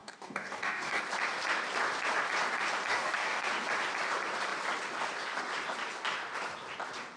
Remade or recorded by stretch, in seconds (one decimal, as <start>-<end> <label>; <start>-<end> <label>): 0.0-1.0 remade; 1.0-2.9 recorded; 2.9-3.5 remade; 3.5-7.2 recorded